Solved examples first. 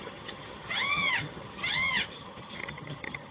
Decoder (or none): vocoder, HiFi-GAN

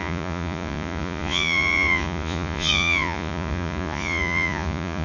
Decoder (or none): vocoder, Vocos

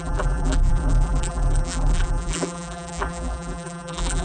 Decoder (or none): vocoder, BigVGAN v2